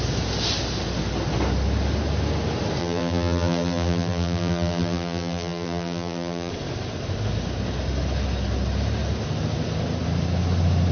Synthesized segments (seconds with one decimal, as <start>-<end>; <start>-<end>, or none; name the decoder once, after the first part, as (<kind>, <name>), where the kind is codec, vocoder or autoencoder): 2.8-6.5 (vocoder, BigVGAN v2)